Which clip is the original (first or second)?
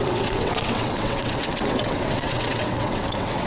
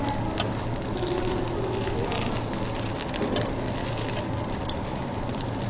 second